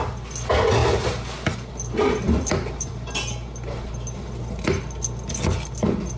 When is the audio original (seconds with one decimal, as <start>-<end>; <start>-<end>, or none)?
0.0-6.2